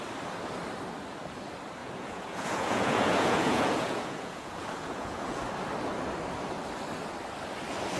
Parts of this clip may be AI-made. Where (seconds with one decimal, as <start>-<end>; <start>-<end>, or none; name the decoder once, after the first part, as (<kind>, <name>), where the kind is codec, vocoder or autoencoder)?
1.8-5.4 (vocoder, Vocos)